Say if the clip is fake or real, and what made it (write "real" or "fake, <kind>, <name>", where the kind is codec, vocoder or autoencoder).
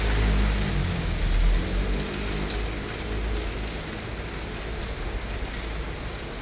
real